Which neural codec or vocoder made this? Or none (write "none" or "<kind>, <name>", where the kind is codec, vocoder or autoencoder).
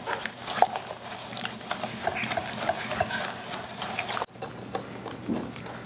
none